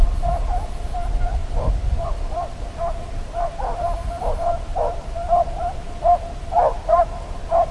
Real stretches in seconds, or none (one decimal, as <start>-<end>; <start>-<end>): 0.0-1.4; 4.1-4.7; 5.6-7.7